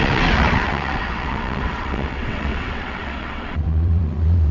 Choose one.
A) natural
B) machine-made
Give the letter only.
B